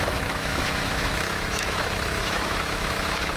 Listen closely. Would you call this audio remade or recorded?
remade